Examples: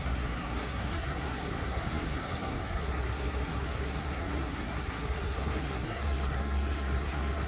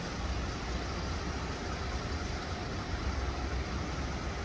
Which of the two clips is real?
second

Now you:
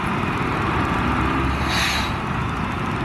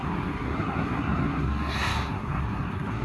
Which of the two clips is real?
first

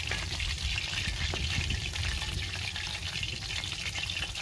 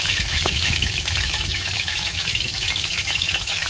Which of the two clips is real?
first